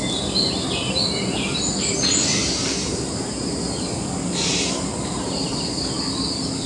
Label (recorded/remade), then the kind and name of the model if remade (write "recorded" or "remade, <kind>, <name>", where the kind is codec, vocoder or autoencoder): recorded